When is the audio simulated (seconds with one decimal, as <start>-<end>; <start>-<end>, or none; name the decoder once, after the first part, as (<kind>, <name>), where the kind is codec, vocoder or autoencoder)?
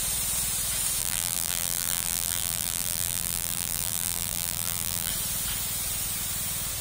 1.0-5.1 (vocoder, BigVGAN v2)